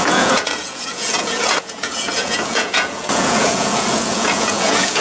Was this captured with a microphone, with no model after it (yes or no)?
no